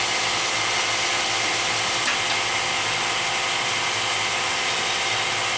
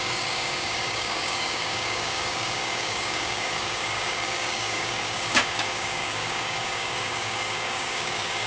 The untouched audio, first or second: first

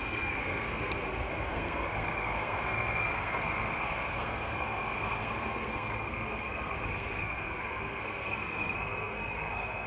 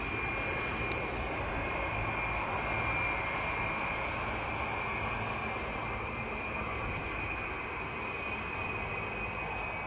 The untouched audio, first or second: second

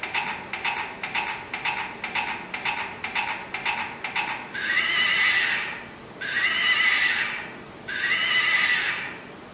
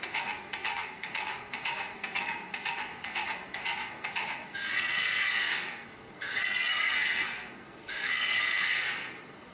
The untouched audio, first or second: first